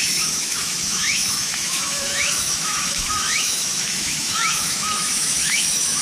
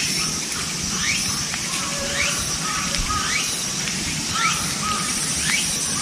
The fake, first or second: first